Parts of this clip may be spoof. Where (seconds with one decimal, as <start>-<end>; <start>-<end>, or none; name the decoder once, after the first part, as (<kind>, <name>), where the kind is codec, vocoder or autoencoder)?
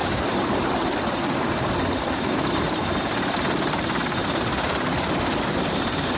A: none